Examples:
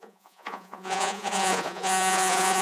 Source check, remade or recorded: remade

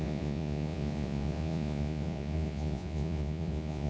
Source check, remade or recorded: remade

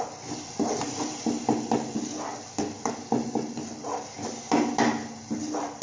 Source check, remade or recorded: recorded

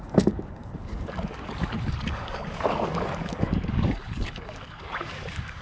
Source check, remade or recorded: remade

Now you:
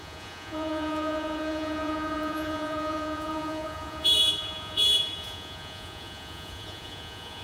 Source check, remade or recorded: remade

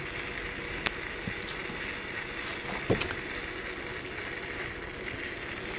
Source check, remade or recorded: recorded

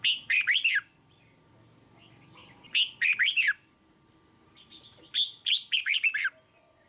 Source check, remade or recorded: recorded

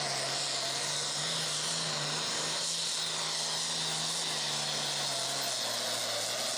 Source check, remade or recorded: recorded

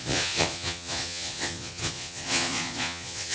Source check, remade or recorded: remade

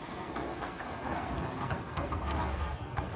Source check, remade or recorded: remade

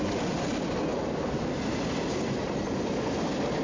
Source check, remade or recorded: recorded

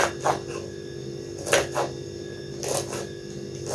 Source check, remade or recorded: recorded